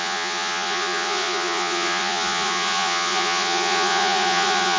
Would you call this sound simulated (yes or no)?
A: yes